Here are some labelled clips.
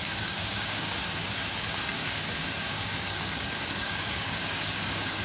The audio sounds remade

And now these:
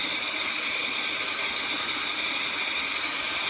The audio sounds recorded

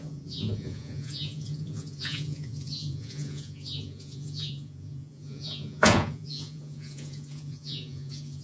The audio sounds remade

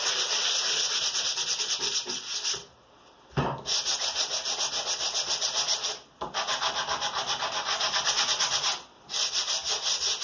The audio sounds recorded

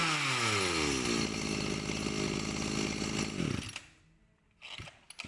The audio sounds recorded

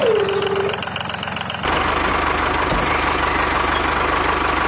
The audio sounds recorded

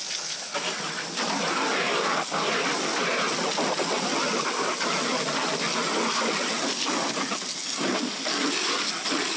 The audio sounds recorded